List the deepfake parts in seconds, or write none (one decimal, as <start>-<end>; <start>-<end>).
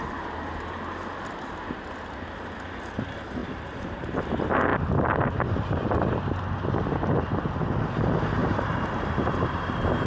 3.4-4.2; 8.4-10.1